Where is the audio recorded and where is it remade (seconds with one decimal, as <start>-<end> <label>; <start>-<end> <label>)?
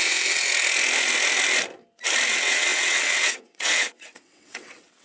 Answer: 0.0-0.5 remade; 0.5-2.3 recorded; 2.3-5.0 remade